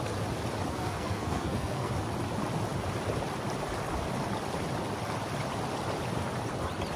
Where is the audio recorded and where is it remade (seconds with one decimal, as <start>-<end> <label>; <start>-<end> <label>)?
0.0-0.7 recorded; 0.7-1.9 remade; 1.9-7.0 recorded